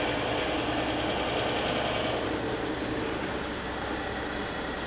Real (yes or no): yes